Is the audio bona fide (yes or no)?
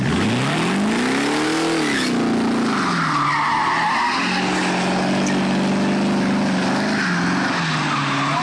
yes